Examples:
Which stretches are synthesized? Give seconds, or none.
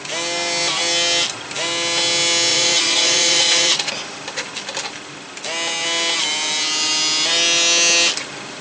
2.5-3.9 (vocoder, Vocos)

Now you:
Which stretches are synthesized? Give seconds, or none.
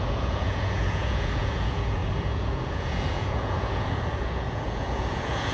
0.0-5.5 (vocoder, Vocos)